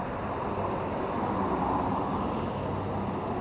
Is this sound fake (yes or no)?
no